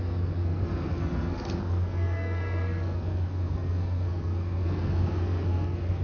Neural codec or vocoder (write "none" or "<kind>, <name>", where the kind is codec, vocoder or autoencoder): codec, SNAC